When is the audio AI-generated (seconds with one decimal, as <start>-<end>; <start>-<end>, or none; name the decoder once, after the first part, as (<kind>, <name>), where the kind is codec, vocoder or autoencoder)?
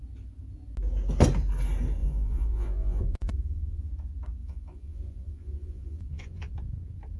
2.0-3.9 (vocoder, Vocos); 4.4-6.5